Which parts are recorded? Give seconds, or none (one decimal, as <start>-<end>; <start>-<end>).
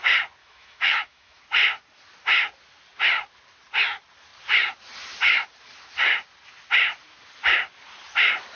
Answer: 0.0-0.4; 1.4-8.6